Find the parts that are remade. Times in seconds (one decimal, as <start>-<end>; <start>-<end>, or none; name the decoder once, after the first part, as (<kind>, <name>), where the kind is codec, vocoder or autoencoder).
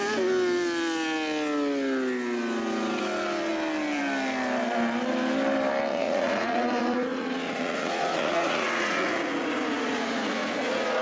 5.9-11.0 (vocoder, Vocos)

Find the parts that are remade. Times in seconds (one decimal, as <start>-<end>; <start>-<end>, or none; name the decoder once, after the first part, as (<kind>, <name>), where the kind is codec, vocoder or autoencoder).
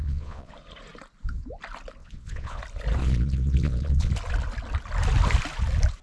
0.0-0.5 (vocoder, Vocos); 2.0-2.6; 3.0-4.1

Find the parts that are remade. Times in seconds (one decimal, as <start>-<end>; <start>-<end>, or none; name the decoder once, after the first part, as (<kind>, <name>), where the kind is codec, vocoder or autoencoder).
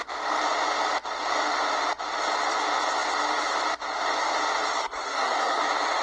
4.8-5.6 (codec, SNAC)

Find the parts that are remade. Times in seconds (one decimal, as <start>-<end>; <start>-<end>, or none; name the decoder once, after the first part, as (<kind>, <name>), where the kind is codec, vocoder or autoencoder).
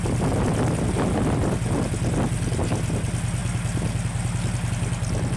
none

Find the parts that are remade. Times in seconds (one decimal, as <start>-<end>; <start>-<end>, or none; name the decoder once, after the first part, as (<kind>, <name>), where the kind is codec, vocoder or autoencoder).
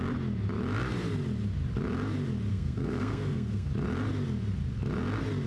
2.5-3.7 (codec, SNAC)